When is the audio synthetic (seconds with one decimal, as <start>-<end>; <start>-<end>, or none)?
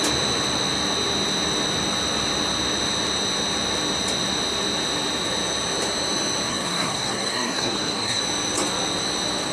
6.5-8.2